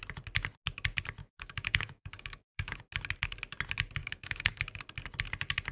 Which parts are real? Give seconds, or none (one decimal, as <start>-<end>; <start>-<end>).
0.0-1.2; 2.8-4.0; 4.6-5.7